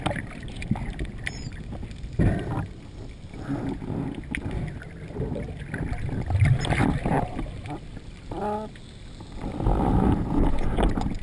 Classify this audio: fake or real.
real